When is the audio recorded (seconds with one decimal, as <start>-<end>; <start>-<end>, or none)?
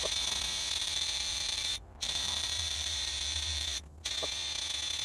0.0-0.8; 3.8-5.0